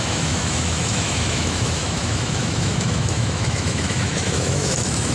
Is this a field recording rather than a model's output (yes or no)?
no